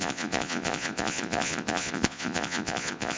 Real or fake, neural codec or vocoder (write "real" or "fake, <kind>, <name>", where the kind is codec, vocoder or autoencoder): fake, vocoder, Vocos